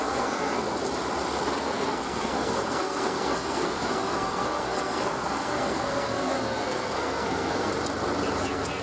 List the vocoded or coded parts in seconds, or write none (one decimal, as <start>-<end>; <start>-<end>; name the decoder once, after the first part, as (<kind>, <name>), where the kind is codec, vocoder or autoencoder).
0.0-0.7 (codec, SNAC); 1.6-7.7; 8.4-8.8